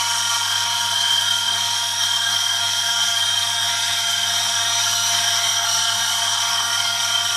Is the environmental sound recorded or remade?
remade